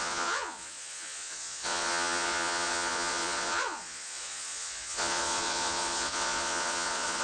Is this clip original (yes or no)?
no